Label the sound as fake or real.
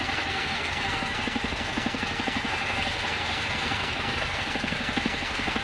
fake